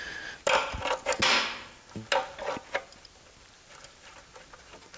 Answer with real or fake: real